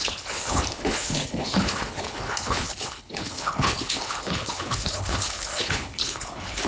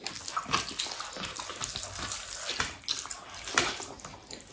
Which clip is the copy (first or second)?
first